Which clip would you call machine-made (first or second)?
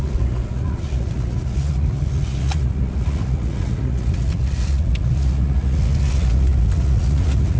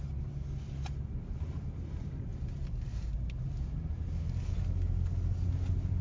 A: first